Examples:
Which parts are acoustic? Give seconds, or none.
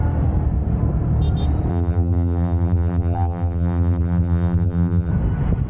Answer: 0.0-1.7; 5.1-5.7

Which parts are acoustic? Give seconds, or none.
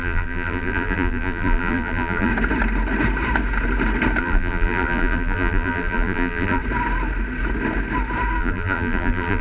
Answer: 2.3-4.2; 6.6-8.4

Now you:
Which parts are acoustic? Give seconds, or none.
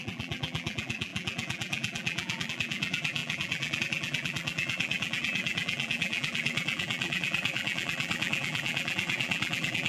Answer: none